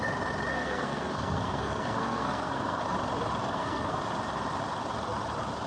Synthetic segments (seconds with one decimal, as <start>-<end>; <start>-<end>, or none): 0.5-2.8; 3.4-4.0